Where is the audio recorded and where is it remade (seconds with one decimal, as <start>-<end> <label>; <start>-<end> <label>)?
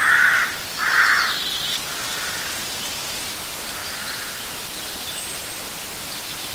0.0-3.8 recorded; 3.8-5.5 remade; 5.5-6.5 recorded